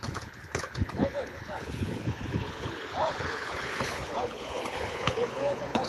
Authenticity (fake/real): fake